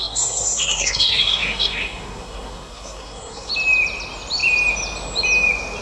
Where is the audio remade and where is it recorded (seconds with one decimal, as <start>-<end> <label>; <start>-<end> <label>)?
0.0-3.5 remade; 3.5-5.8 recorded